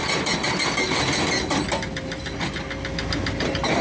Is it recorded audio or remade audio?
recorded